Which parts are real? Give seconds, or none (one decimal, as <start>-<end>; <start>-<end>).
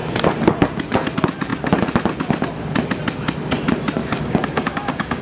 0.0-4.0